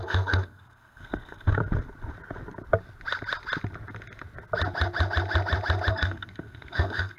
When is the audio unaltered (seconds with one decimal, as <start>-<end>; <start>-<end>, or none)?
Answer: 1.6-5.9